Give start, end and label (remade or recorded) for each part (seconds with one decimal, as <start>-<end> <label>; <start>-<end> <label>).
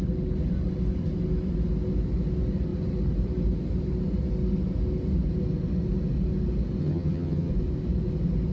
0.0-6.8 recorded; 6.8-7.5 remade; 7.5-8.5 recorded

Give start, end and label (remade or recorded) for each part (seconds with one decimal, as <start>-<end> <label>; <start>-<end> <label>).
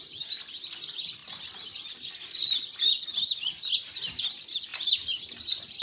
0.0-5.8 recorded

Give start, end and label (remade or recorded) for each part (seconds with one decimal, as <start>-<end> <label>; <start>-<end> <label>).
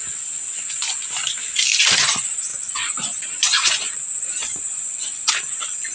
0.0-2.5 recorded; 2.5-3.9 remade; 3.9-4.5 recorded; 4.5-5.3 remade; 5.3-5.9 recorded